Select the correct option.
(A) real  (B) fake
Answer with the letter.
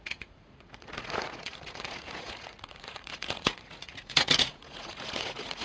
B